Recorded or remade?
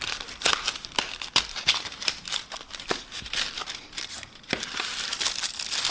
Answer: remade